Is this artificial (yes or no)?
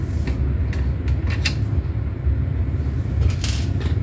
no